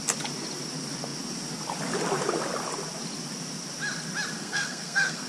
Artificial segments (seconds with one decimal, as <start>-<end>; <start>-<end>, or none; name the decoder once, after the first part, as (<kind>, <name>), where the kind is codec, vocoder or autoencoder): 4.4-5.3 (codec, SNAC)